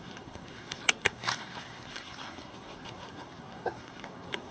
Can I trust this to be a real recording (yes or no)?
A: no